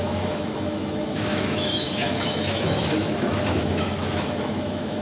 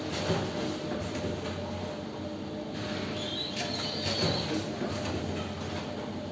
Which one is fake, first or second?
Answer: first